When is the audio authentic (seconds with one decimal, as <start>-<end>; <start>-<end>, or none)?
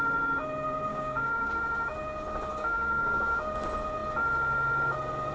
0.0-0.9; 1.5-2.5; 3.5-5.3